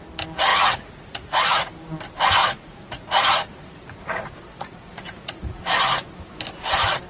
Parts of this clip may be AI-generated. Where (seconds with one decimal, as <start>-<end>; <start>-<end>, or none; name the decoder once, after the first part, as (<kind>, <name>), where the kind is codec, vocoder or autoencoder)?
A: 0.5-1.7 (vocoder, Vocos); 2.4-5.6